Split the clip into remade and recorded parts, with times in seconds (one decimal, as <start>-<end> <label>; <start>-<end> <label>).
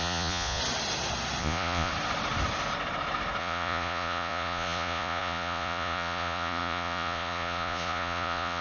0.0-0.6 remade; 0.6-1.4 recorded; 1.4-1.9 remade; 1.9-3.4 recorded; 3.4-8.6 remade